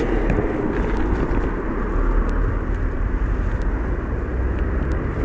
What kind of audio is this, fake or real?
real